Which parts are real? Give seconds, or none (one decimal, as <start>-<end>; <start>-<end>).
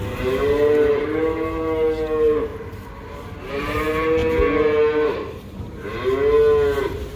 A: 2.5-3.5; 4.2-5.1; 5.9-6.8